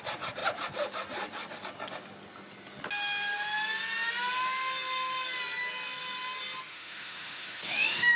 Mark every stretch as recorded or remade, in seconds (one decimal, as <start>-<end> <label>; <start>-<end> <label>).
0.0-6.7 recorded; 6.7-8.2 remade

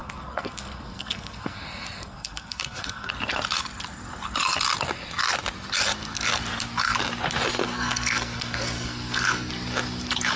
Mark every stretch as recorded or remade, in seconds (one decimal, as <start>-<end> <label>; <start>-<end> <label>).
0.0-3.1 remade; 3.1-7.6 recorded; 7.6-9.5 remade; 9.5-10.4 recorded

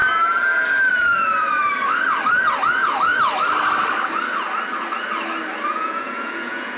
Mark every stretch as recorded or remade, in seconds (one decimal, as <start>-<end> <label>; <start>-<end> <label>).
0.0-0.9 recorded; 0.9-1.6 remade; 1.6-5.7 recorded; 5.7-6.8 remade

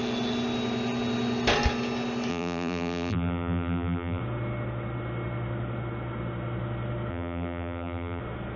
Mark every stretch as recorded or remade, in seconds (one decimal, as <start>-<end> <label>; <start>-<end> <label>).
0.0-2.3 recorded; 2.3-4.2 remade; 4.2-7.1 recorded; 7.1-8.2 remade; 8.2-8.6 recorded

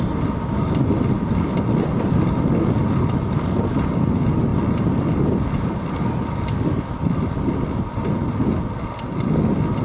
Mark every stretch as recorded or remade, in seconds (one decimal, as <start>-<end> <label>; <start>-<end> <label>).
0.0-9.8 recorded

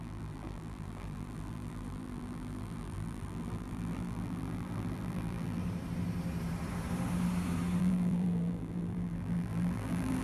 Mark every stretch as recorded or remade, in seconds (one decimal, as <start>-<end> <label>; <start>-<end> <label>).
0.0-5.6 remade; 5.6-7.8 recorded; 7.8-10.2 remade